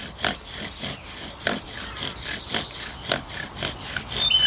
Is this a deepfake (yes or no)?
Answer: yes